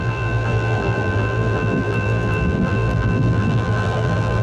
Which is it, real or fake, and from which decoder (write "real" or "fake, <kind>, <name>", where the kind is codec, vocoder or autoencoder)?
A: fake, vocoder, BigVGAN v2